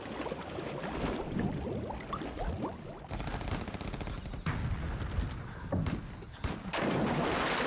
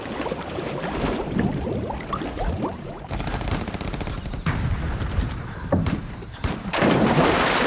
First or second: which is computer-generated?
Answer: second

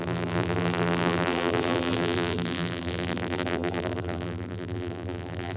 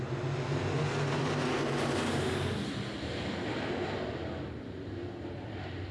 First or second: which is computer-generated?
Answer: first